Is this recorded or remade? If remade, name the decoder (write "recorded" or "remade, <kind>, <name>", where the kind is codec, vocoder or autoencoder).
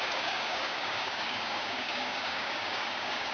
remade, codec, DAC